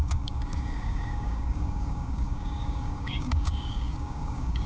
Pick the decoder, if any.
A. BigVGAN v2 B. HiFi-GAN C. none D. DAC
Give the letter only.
D